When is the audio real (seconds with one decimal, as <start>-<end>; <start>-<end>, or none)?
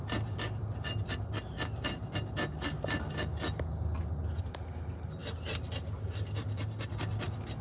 0.0-7.6